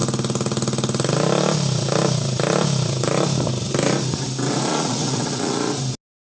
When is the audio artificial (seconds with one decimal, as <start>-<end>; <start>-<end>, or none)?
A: 4.7-5.7